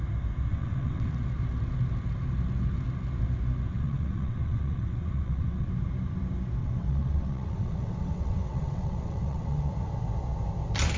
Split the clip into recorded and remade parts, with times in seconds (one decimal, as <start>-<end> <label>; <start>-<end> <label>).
0.0-0.5 recorded; 0.5-1.1 remade; 1.1-3.7 recorded; 3.7-5.7 remade; 5.7-6.6 recorded; 6.6-9.7 remade; 9.7-11.0 recorded